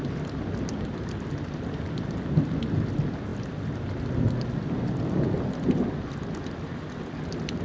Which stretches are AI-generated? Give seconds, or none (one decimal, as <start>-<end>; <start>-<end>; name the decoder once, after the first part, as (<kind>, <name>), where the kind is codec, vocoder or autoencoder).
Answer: none